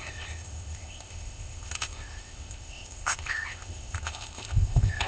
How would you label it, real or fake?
fake